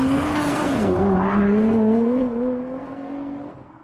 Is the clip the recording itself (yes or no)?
no